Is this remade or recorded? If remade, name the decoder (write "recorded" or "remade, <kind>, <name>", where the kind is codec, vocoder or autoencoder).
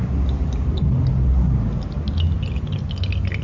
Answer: recorded